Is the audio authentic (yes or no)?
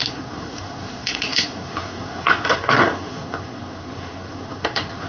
no